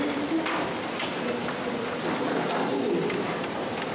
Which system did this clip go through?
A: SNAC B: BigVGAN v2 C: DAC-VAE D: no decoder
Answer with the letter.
B